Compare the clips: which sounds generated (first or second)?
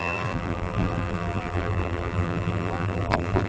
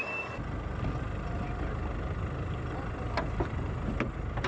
first